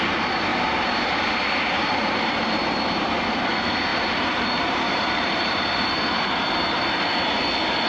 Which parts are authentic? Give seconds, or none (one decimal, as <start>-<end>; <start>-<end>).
0.0-0.5; 3.2-3.9; 6.8-7.9